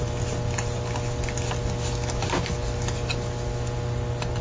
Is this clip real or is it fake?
real